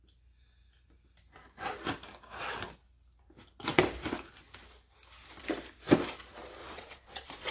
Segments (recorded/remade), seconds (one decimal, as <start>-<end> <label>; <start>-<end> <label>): 0.0-6.6 recorded; 6.6-7.5 remade